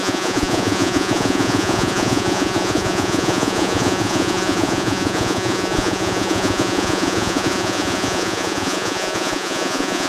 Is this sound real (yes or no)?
no